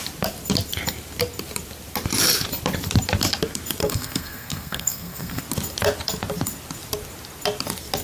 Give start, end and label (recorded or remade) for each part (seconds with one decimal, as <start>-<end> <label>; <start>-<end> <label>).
0.0-3.8 recorded; 3.8-5.4 remade; 5.4-8.0 recorded